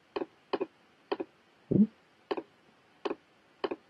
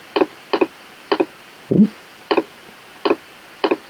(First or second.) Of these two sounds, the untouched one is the first